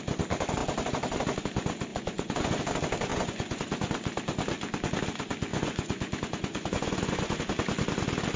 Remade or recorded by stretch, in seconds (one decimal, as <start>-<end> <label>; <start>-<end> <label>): 0.0-1.9 recorded; 1.9-2.6 remade; 2.6-3.1 recorded; 3.1-3.6 remade; 3.6-5.5 recorded; 5.5-7.4 remade; 7.4-8.4 recorded